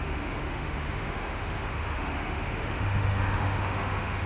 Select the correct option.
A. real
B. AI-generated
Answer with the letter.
B